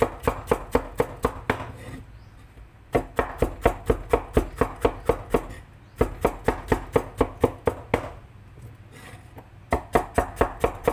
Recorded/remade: recorded